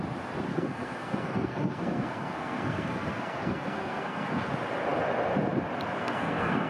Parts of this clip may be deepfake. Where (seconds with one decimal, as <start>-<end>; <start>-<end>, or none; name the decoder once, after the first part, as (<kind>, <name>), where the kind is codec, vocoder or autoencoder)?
0.5-4.5 (codec, SNAC); 6.0-6.7